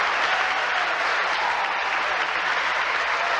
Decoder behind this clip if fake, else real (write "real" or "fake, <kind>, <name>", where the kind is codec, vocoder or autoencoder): real